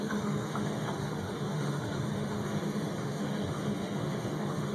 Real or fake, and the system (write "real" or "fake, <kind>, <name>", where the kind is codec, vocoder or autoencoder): fake, autoencoder, DAC-VAE